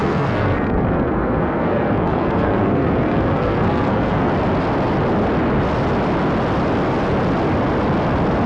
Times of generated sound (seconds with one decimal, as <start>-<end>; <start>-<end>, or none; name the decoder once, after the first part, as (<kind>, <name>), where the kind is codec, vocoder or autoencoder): 0.0-4.3 (codec, SNAC)